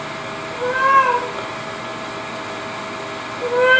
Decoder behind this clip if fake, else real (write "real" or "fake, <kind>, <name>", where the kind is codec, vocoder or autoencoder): real